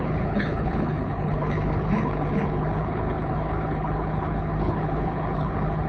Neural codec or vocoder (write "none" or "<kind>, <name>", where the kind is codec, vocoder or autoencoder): codec, HILCodec